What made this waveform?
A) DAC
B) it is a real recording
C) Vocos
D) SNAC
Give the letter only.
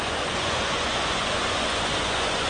C